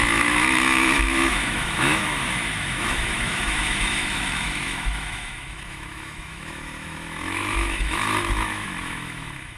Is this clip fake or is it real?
fake